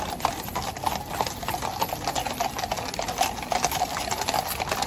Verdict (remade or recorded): recorded